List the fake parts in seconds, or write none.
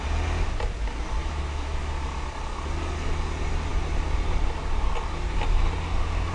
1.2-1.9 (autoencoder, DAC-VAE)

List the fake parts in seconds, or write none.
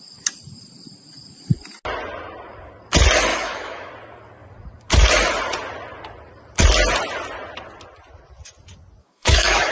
3.3-3.9 (autoencoder, DAC-VAE); 9.0-9.7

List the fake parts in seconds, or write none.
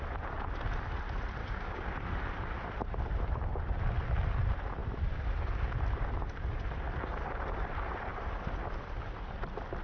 1.4-1.9 (codec, DAC)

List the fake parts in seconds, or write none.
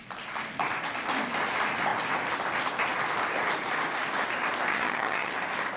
4.7-5.3 (vocoder, HiFi-GAN)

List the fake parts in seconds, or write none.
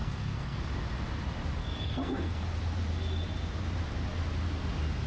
0.0-0.6 (codec, SNAC); 1.6-2.4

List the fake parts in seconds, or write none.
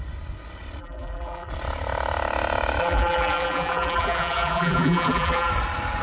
0.8-1.5 (vocoder, BigVGAN v2); 2.8-5.5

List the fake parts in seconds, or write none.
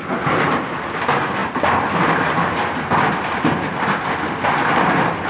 none